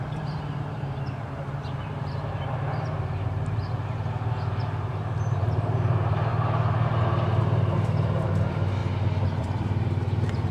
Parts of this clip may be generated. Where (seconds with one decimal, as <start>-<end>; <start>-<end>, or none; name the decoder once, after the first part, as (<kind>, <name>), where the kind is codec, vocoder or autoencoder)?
0.0-3.6 (vocoder, BigVGAN v2); 4.5-6.3; 7.4-8.8; 9.4-10.5